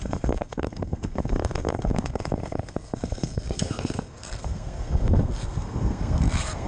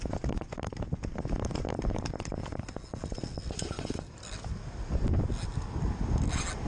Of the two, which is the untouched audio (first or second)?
second